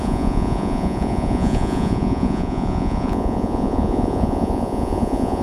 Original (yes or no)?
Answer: no